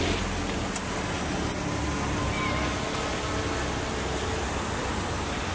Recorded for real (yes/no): yes